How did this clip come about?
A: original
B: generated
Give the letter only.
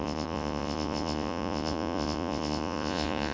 B